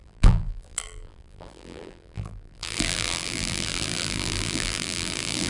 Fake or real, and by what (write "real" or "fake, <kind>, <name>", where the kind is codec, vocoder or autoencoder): fake, vocoder, BigVGAN v2